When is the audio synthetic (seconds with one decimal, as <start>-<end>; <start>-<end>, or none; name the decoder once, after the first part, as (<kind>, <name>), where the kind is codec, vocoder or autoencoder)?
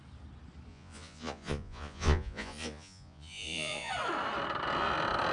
0.7-3.9 (vocoder, Vocos)